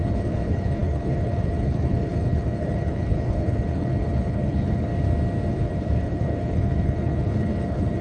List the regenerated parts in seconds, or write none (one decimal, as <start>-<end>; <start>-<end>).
0.0-4.9; 5.5-8.0